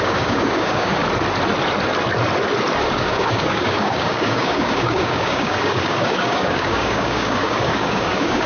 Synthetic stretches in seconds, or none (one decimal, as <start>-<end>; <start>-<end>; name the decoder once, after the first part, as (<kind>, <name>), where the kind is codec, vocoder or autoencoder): 0.0-1.0 (codec, DAC); 2.9-8.5